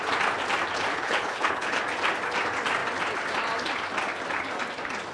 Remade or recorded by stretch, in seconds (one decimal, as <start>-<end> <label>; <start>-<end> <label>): 0.0-0.9 recorded; 0.9-1.8 remade; 1.8-5.1 recorded